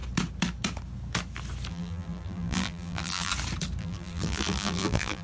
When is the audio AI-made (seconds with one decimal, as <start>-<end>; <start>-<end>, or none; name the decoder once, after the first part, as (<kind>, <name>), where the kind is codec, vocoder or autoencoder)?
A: 1.7-3.3 (vocoder, BigVGAN v2); 3.8-5.2